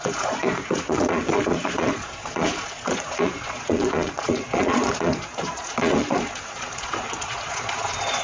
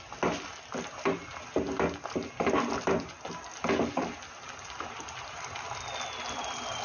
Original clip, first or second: second